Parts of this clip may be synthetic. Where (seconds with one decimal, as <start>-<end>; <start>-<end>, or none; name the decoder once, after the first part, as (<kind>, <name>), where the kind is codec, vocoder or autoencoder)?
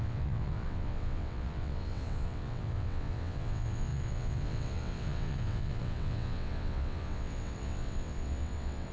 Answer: 0.0-8.9 (vocoder, WaveNeXt)